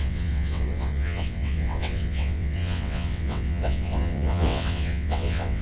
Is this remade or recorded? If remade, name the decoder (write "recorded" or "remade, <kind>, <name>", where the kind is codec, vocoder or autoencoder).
remade, vocoder, WaveNeXt